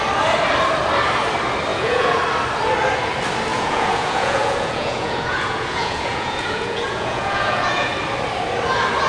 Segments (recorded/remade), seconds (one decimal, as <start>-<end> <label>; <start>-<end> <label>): 0.0-1.7 recorded; 1.7-2.2 remade; 2.2-3.5 recorded; 3.5-7.9 remade; 7.9-9.1 recorded